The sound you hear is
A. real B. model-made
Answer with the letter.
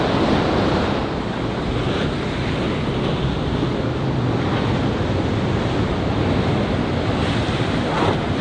A